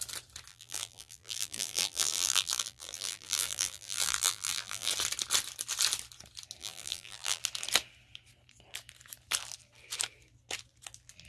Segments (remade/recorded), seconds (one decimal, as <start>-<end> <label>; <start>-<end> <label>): 0.0-0.5 recorded; 0.5-4.9 remade; 4.9-6.6 recorded; 6.6-7.4 remade; 7.4-11.3 recorded